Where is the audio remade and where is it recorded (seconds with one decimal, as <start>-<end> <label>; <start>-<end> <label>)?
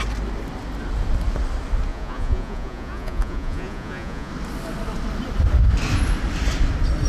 0.0-1.9 recorded; 1.9-4.3 remade; 4.3-7.1 recorded